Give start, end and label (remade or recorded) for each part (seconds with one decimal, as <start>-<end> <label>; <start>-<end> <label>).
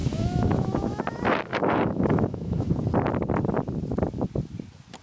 0.0-1.0 remade; 1.0-1.5 recorded; 1.5-2.7 remade; 2.7-5.0 recorded